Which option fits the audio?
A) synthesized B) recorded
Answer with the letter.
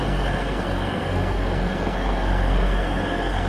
A